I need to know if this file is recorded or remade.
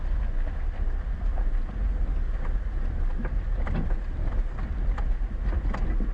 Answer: recorded